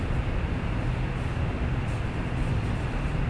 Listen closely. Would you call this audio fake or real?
real